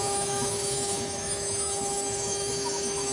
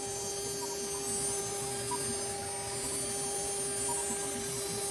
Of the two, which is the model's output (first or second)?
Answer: first